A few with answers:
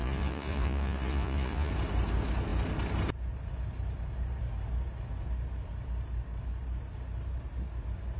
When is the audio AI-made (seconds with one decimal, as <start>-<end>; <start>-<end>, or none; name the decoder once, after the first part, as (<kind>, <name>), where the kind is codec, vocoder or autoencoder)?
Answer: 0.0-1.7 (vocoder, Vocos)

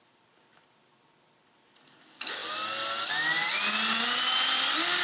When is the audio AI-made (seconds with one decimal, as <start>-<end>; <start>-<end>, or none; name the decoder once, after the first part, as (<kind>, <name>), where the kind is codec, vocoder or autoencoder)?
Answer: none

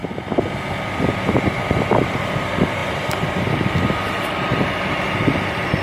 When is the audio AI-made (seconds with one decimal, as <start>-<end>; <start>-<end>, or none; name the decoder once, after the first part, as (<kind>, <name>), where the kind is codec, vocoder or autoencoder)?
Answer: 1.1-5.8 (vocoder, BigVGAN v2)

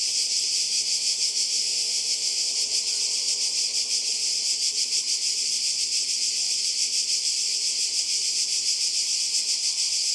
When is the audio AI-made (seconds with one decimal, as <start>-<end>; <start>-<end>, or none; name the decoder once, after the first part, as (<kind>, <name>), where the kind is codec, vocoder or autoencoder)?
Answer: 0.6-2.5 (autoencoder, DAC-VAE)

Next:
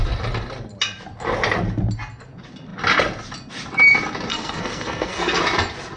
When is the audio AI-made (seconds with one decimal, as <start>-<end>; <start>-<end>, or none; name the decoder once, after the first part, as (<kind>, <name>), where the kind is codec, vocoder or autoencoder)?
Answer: 4.3-5.4 (codec, SNAC)